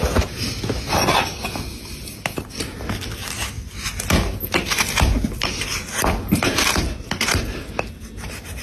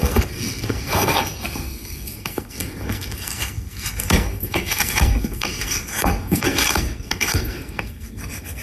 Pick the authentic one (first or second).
first